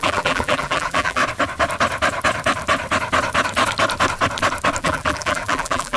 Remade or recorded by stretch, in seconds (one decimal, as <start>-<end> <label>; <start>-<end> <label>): 0.0-1.2 remade; 1.2-4.8 recorded; 4.8-6.0 remade